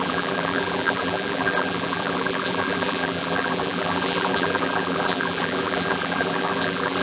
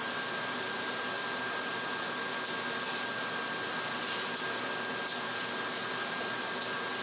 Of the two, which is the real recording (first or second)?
second